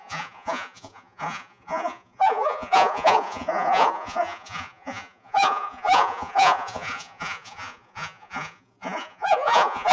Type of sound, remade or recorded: remade